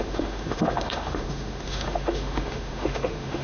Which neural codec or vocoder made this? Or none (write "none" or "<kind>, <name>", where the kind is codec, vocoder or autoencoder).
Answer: autoencoder, DAC-VAE